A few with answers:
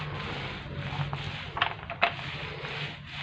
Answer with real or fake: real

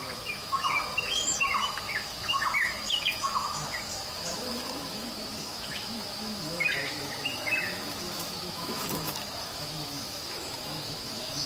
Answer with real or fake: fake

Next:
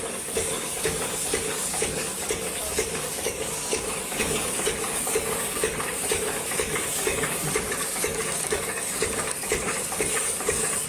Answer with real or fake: fake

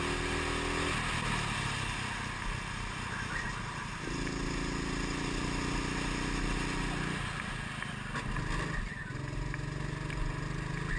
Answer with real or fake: real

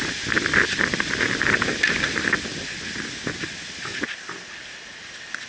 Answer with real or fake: real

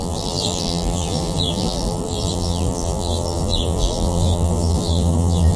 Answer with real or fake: fake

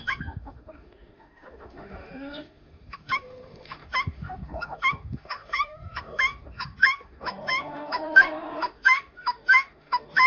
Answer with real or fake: fake